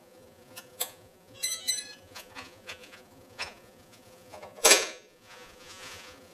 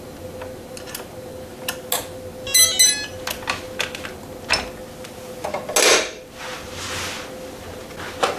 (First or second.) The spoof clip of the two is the first